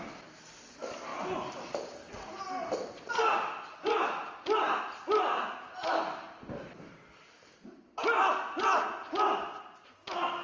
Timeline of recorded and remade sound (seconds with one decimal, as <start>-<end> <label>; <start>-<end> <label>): 0.0-10.4 recorded